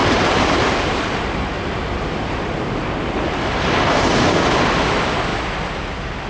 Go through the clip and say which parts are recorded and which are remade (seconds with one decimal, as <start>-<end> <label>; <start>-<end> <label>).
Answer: 0.0-1.7 remade; 1.7-6.3 recorded